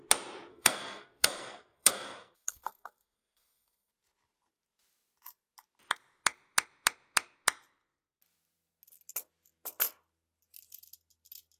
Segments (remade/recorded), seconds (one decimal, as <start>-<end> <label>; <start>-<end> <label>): 0.0-0.5 recorded; 0.5-3.9 remade; 3.9-11.6 recorded